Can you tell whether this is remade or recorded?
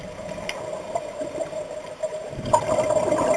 remade